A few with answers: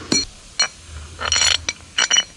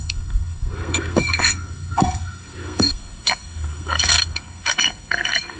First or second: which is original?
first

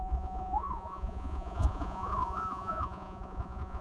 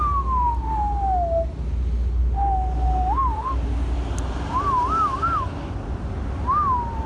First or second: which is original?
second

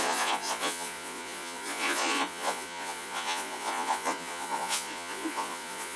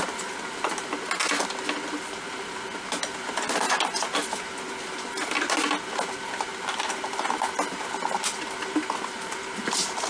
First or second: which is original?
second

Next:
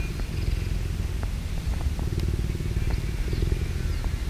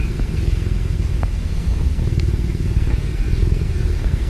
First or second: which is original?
first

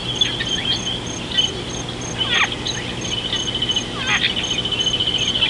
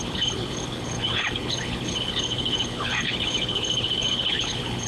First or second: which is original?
first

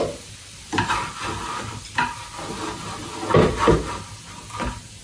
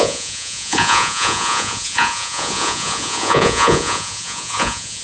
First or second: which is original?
first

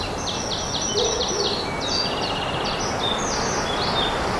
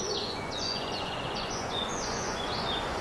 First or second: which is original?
first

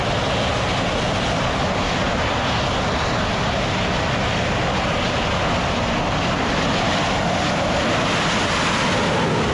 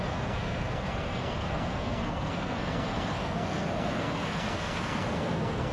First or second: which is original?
first